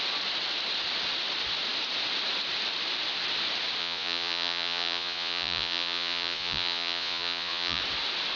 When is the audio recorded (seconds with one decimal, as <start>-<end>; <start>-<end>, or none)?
0.0-3.8; 7.8-8.4